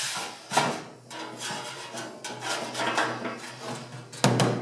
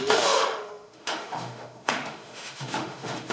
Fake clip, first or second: second